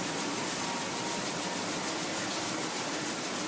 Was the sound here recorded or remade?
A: recorded